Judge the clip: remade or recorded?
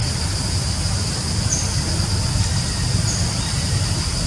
recorded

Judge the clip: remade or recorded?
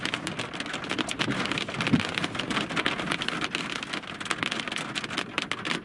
recorded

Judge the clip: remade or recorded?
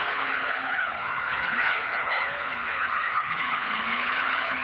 remade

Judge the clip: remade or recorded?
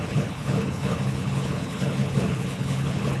remade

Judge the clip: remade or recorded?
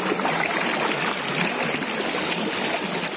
recorded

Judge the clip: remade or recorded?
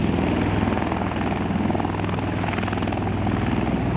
recorded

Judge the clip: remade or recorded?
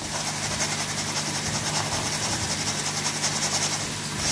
recorded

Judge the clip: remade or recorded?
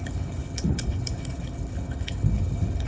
remade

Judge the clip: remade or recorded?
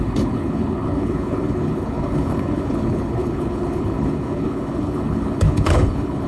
remade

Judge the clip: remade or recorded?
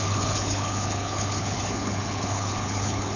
remade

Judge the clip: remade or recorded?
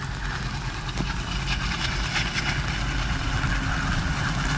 recorded